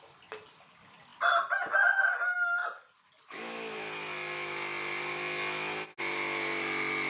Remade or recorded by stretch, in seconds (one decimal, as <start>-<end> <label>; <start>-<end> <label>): 0.0-7.1 recorded